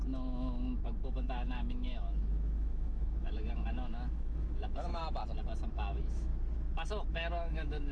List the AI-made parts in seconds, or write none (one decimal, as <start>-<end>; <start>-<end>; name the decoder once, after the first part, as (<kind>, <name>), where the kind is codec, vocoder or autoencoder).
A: 0.0-5.0 (autoencoder, DAC-VAE); 5.7-6.3; 7.1-7.9